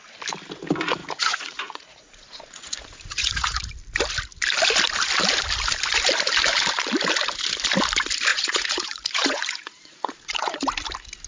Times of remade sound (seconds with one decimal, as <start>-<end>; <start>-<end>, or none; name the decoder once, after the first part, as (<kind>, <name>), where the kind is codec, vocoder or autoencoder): 1.0-3.7 (vocoder, Vocos); 8.3-10.7